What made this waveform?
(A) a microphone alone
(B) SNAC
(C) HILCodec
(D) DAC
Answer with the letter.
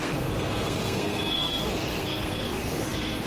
B